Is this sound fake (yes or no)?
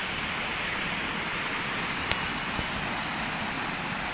no